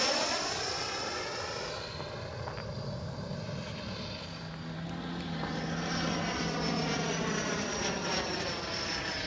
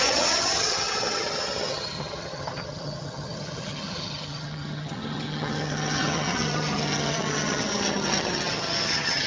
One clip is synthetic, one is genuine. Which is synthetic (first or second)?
second